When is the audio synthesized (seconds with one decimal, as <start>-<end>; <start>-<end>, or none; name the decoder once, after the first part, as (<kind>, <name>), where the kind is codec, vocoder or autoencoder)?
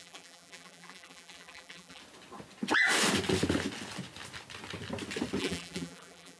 0.0-2.0 (vocoder, BigVGAN v2); 5.4-6.4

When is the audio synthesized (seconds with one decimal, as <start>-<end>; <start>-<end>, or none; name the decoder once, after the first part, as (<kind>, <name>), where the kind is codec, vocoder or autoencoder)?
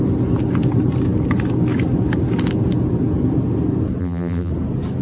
4.0-4.5 (vocoder, BigVGAN v2)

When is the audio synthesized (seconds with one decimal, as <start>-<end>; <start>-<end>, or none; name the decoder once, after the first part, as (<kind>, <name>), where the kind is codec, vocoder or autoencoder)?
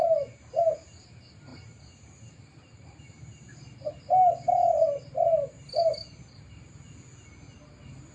1.5-3.9 (vocoder, BigVGAN v2)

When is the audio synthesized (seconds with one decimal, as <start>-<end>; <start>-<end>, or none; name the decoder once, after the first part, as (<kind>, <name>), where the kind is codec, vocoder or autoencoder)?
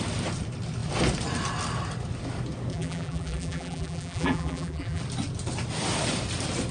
2.7-5.0 (vocoder, BigVGAN v2)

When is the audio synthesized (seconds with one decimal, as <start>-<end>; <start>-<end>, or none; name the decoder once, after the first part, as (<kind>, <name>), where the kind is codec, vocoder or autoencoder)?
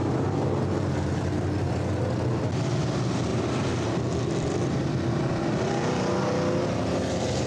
3.3-5.6 (vocoder, BigVGAN v2)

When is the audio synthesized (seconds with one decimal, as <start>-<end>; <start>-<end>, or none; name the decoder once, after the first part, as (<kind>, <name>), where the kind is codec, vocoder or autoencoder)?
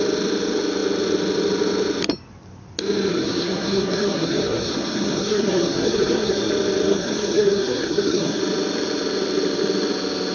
3.1-6.5 (codec, SNAC); 6.9-8.4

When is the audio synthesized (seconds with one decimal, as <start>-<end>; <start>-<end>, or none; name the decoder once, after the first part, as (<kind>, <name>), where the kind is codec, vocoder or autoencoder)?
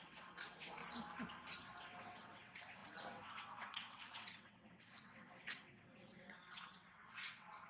0.0-0.8 (vocoder, WaveNeXt); 1.6-7.7